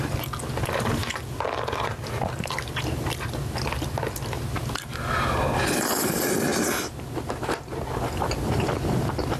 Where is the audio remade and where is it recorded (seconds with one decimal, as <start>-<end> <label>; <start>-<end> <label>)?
0.0-9.4 recorded